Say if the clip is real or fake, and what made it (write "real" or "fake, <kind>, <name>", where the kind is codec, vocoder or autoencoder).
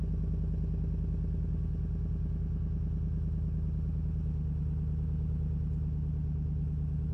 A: real